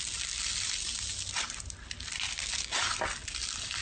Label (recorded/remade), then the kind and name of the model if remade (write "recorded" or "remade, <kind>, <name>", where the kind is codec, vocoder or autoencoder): recorded